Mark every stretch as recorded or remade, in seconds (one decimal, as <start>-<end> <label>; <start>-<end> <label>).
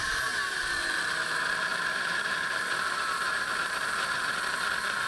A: 0.0-0.6 remade; 0.6-1.7 recorded; 1.7-4.3 remade; 4.3-5.1 recorded